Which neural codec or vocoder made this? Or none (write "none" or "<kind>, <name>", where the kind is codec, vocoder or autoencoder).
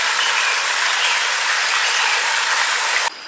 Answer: none